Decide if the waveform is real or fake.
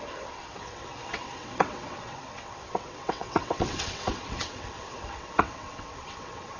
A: fake